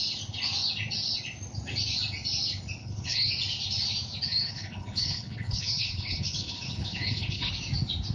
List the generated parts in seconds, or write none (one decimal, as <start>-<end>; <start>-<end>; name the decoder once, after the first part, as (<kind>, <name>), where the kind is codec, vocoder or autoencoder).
2.8-3.3 (codec, HILCodec); 4.3-7.5